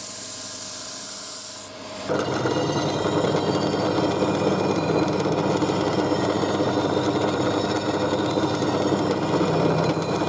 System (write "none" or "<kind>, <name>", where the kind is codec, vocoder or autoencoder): none